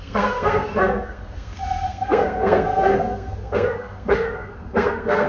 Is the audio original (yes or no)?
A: no